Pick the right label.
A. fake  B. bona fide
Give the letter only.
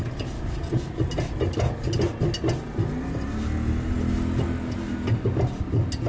B